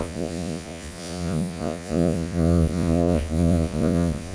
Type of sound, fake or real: fake